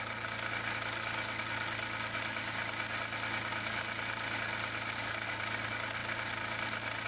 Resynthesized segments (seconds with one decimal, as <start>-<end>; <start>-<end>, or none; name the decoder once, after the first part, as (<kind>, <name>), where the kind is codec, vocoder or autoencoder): none